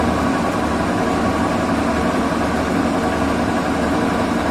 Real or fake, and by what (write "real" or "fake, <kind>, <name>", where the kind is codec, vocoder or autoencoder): real